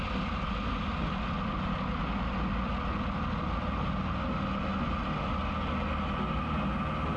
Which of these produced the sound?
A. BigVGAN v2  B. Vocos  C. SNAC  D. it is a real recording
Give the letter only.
D